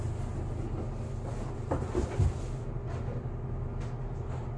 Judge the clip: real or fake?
real